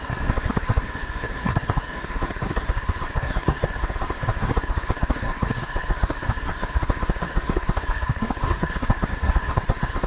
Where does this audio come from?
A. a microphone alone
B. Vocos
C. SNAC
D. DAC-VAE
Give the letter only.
C